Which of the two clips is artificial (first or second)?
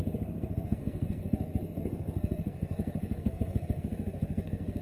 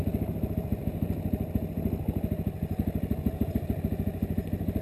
first